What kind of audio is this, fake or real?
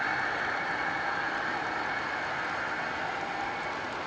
real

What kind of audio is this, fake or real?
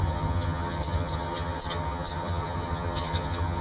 fake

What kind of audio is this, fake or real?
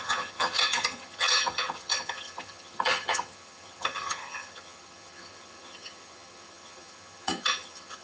fake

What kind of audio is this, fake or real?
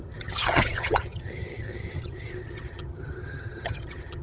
fake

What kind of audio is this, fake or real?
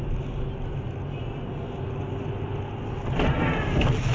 real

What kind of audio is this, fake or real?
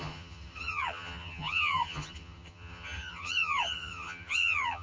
fake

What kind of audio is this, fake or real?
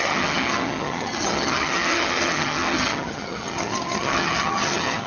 fake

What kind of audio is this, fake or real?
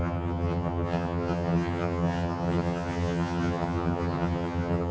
fake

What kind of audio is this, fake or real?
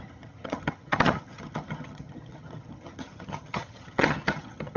fake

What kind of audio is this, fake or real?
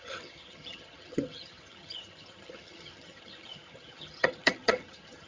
fake